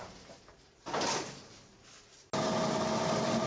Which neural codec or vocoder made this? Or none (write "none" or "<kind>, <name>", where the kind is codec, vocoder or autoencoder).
none